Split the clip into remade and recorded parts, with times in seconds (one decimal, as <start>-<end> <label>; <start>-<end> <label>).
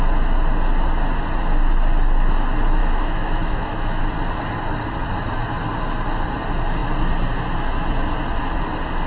0.0-2.8 recorded; 2.8-4.0 remade; 4.0-9.1 recorded